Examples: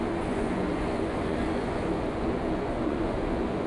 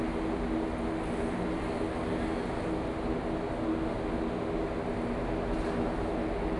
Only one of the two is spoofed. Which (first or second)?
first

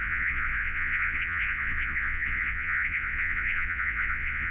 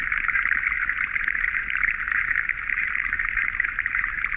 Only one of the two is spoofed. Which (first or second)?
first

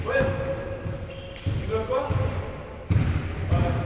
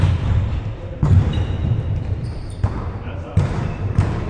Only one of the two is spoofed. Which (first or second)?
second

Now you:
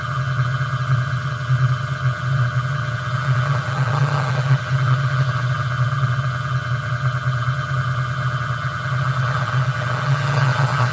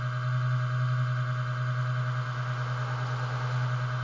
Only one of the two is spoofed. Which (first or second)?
first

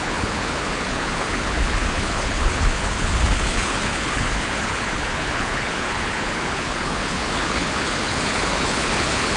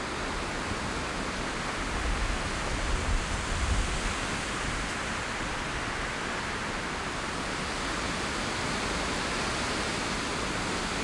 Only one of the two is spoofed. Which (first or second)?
first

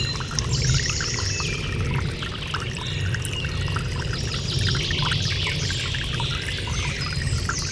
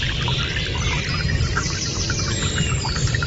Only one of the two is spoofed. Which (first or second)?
second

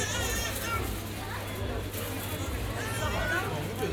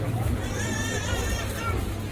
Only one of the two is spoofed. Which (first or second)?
second